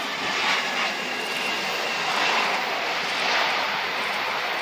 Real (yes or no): yes